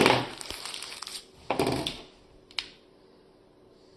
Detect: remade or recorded recorded